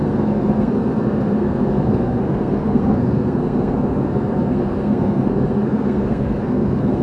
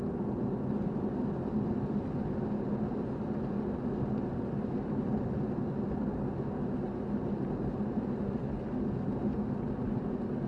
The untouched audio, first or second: second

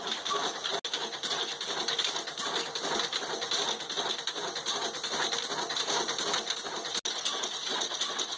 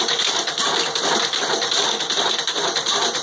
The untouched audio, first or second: first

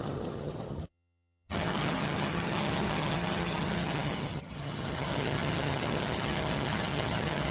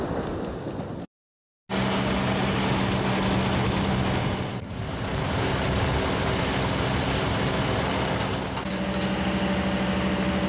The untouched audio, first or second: second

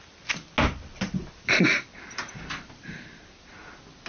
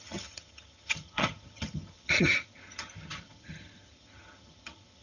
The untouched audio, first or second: first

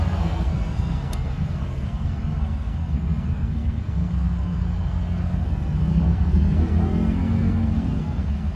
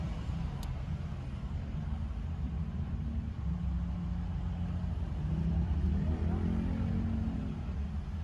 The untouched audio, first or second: second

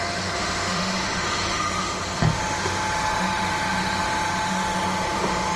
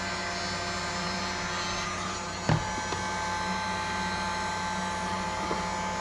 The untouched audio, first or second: second